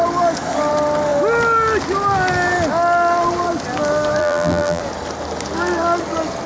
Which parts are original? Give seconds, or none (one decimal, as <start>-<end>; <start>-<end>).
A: 0.0-4.2; 4.8-6.5